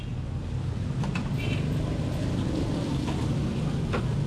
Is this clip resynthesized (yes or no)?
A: no